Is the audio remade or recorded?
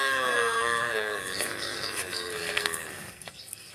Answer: remade